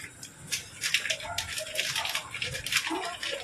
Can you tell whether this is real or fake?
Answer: real